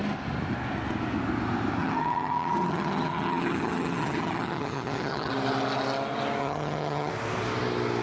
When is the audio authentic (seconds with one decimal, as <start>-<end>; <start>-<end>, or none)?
0.0-1.8; 5.3-6.4; 7.1-8.0